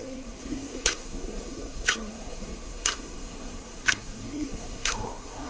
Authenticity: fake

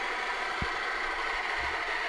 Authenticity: real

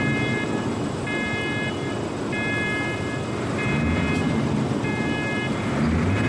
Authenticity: real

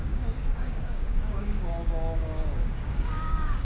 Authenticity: fake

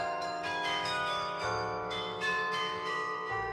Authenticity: fake